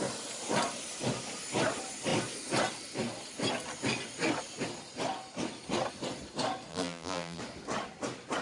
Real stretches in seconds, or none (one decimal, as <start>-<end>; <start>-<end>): 0.0-6.7; 7.4-8.4